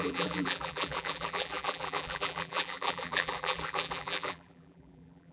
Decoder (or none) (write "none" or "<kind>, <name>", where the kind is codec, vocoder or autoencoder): vocoder, BigVGAN v2